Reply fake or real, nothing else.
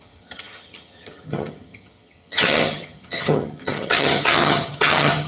fake